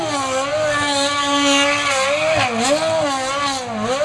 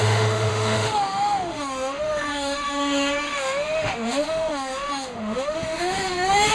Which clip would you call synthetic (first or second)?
second